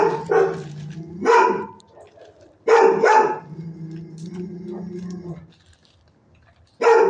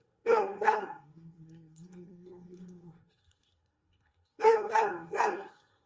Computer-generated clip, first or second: second